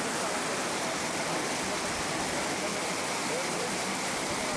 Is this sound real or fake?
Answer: real